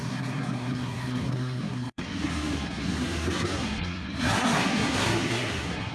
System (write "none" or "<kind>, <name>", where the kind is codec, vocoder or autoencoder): codec, SNAC